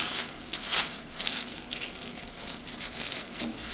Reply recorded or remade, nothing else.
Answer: remade